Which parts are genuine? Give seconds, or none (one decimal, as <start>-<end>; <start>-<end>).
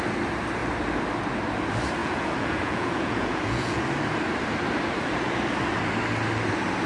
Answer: 0.0-2.0; 3.8-6.9